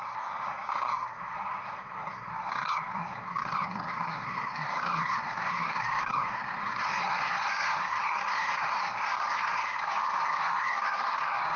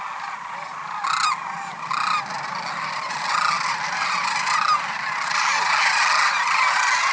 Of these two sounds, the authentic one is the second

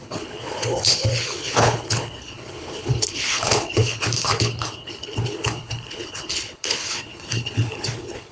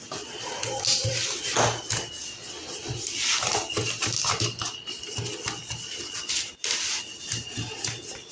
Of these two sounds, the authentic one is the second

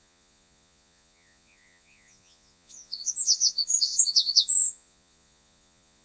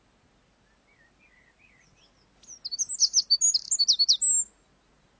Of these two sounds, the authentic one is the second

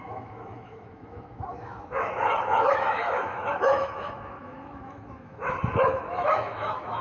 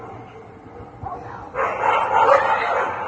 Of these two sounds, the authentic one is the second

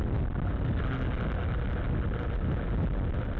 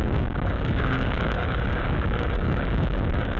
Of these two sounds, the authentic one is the first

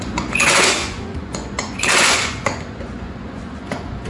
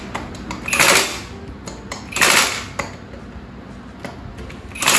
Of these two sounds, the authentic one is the second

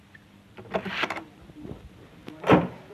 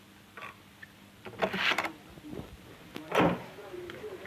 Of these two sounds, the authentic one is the second